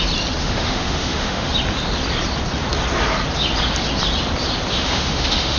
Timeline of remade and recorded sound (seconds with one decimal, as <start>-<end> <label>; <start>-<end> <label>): 0.0-0.4 recorded; 0.4-1.5 remade; 1.5-4.7 recorded; 4.7-5.6 remade

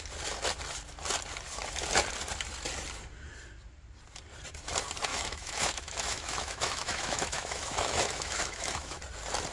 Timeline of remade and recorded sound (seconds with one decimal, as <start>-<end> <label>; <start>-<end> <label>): 0.0-5.1 recorded; 5.1-9.0 remade; 9.0-9.5 recorded

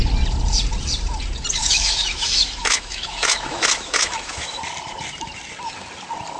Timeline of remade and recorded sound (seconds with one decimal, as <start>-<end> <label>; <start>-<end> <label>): 0.0-1.6 recorded; 1.6-4.6 remade; 4.6-6.4 recorded

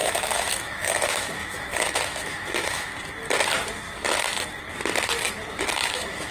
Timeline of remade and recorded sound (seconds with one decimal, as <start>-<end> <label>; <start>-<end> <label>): 0.0-2.9 remade; 2.9-5.5 recorded; 5.5-6.3 remade